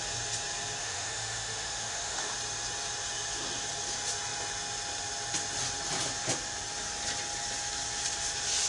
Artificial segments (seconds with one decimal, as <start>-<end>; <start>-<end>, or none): 0.8-2.3